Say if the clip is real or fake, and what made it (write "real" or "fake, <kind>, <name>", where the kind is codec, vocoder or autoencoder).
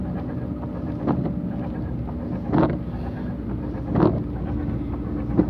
real